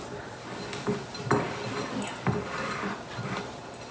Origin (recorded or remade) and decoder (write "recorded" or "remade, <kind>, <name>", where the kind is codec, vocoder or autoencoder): recorded